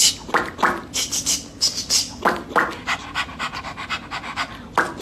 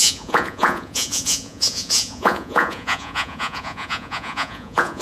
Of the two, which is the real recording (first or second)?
first